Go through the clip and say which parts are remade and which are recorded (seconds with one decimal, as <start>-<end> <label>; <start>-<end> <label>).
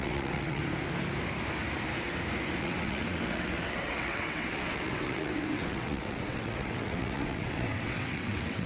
0.0-0.6 remade; 0.6-2.6 recorded; 2.6-8.7 remade